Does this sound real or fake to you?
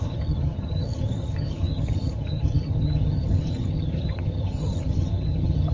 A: fake